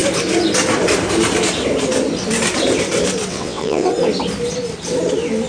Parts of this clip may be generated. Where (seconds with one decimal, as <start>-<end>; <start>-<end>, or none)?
3.3-3.9